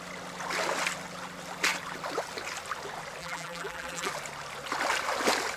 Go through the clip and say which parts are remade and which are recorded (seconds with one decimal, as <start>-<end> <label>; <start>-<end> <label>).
0.0-3.2 recorded; 3.2-4.1 remade; 4.1-5.6 recorded